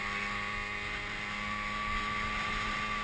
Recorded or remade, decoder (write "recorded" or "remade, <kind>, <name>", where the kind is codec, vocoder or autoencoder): recorded